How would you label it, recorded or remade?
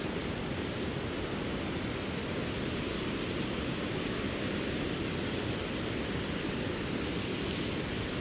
recorded